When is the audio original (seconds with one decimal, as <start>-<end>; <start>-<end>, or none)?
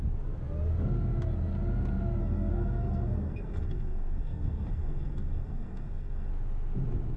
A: 0.0-2.2; 6.3-7.2